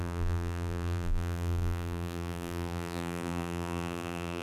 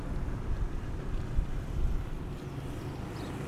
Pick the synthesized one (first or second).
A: first